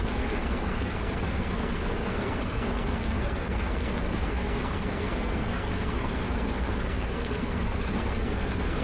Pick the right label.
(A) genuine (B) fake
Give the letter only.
B